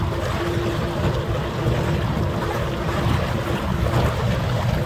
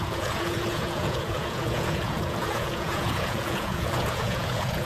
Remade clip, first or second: second